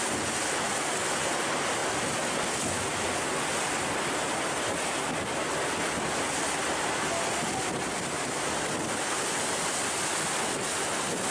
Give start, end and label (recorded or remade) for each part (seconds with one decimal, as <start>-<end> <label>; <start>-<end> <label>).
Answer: 0.0-11.3 recorded